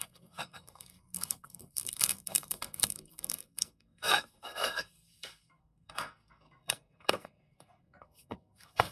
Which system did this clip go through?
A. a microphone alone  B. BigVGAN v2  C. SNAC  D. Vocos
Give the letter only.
C